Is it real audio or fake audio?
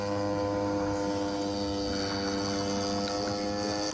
real